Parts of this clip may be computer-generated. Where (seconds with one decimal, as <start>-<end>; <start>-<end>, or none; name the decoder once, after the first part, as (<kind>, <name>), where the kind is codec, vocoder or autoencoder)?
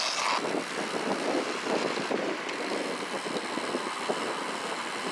1.1-3.1 (vocoder, BigVGAN v2)